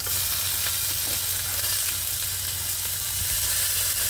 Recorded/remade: recorded